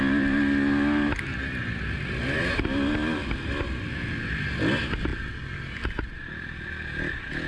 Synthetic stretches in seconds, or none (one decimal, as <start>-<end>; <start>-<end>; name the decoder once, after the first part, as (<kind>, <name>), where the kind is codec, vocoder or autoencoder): none